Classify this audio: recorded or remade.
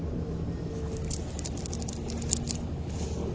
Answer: recorded